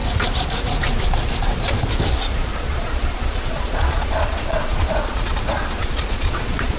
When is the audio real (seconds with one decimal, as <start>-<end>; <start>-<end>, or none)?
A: 0.0-2.5